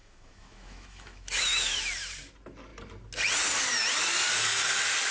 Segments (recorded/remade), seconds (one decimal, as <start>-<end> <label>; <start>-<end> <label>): 0.0-1.8 remade; 1.8-5.1 recorded